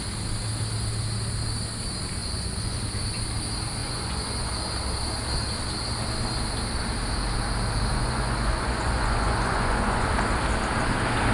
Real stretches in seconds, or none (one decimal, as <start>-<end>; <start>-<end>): 0.0-2.2; 2.8-3.8; 4.5-7.9; 10.1-11.3